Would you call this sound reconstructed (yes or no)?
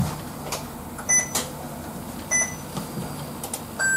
no